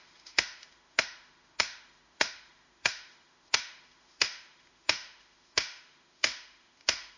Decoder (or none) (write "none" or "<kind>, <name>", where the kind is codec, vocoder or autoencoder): autoencoder, DAC-VAE